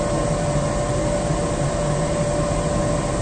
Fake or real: real